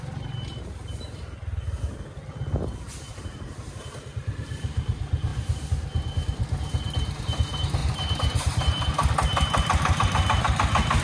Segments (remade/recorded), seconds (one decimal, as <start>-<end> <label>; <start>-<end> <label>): 0.0-3.1 recorded; 3.1-4.3 remade; 4.3-7.8 recorded; 7.8-8.9 remade; 8.9-11.0 recorded